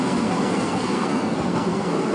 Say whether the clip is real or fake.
fake